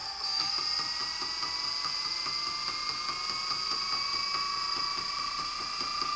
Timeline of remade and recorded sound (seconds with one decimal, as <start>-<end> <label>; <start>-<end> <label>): 0.0-0.5 remade; 0.5-6.2 recorded